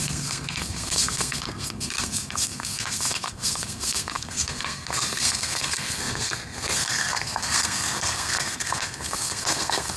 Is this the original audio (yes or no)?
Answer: no